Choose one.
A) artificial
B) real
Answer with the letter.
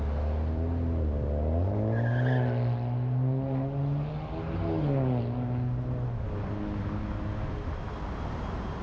B